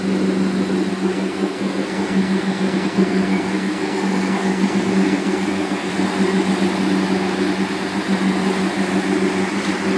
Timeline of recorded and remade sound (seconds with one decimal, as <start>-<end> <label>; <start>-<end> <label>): 0.0-0.9 recorded; 0.9-5.9 remade; 5.9-10.0 recorded